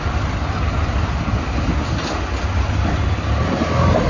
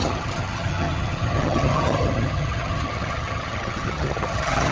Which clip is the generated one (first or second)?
second